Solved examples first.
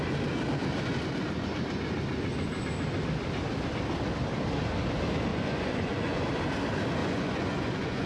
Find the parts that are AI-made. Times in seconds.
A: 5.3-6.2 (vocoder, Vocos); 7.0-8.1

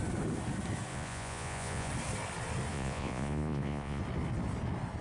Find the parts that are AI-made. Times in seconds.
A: 0.9-1.9 (vocoder, Vocos); 2.7-4.0

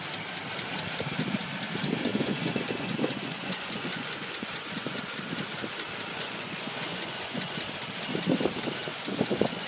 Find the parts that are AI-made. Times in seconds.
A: 2.1-5.0 (vocoder, Vocos); 6.1-7.6; 8.9-9.7

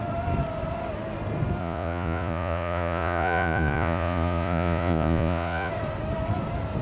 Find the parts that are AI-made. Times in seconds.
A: 1.6-5.7 (vocoder, Vocos)

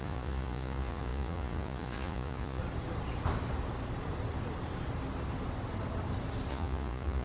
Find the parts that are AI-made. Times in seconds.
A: 0.0-2.6 (vocoder, Vocos); 6.5-7.2

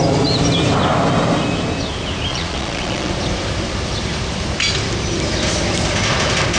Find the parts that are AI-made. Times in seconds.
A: 2.3-3.1 (vocoder, Vocos)

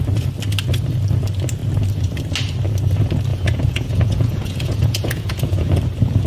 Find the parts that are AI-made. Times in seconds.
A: 3.3-5.8 (vocoder, Vocos)

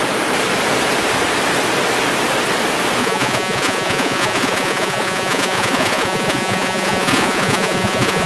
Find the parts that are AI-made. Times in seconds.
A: 3.0-8.3 (vocoder, Vocos)